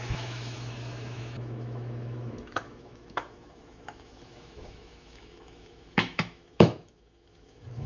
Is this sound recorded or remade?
remade